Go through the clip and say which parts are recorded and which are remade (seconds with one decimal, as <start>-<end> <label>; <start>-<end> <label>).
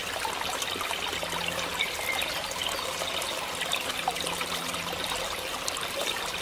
0.0-2.1 recorded; 2.1-2.6 remade; 2.6-3.9 recorded; 3.9-6.4 remade